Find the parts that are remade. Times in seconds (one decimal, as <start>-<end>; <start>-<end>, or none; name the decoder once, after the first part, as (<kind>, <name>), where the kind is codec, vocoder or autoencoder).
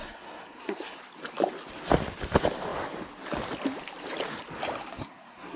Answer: 0.0-1.0 (codec, SNAC); 5.0-5.6